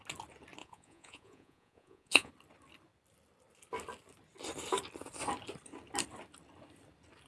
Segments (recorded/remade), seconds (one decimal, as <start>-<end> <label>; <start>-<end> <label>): 0.0-0.6 recorded; 0.6-2.3 remade; 2.3-7.3 recorded